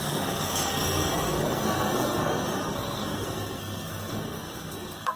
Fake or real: fake